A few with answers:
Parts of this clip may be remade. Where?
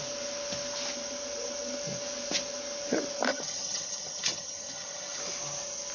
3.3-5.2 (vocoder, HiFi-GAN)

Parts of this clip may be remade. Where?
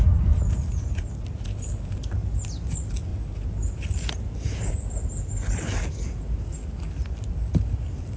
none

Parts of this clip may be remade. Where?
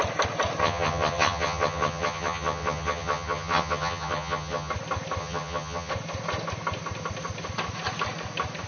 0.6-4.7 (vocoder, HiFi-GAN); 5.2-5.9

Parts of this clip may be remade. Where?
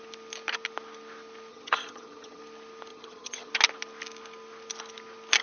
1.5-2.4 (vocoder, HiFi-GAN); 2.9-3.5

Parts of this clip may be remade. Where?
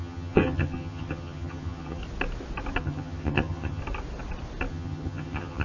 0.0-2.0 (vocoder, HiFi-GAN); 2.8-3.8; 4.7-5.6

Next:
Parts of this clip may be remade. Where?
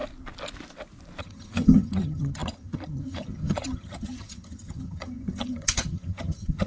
1.2-6.7 (vocoder, HiFi-GAN)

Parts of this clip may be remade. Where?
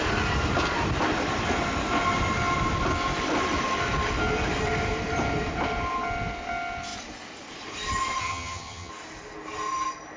8.2-8.9 (vocoder, HiFi-GAN)